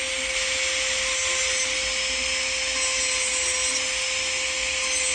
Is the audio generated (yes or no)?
no